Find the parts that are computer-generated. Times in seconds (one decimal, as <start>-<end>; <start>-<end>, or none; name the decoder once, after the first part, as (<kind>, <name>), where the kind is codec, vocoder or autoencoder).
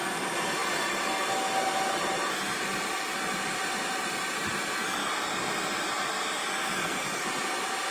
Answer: 6.6-7.2 (codec, SNAC)